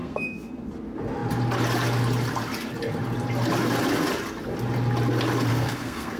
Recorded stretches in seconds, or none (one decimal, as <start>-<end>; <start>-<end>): 0.7-5.5

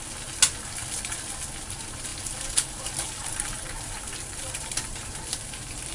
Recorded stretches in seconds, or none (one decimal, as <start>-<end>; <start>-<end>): 0.0-2.1; 5.2-5.9

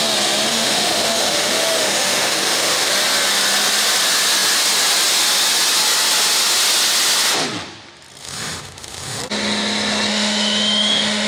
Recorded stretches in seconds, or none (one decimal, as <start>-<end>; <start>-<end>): 0.0-0.5; 2.9-8.2; 9.2-10.1

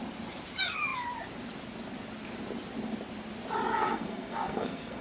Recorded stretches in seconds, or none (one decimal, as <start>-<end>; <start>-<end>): 0.0-3.7

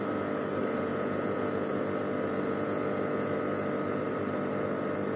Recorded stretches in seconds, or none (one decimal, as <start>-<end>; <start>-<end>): 0.0-5.2